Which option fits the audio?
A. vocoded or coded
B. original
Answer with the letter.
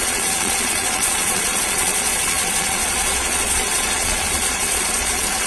A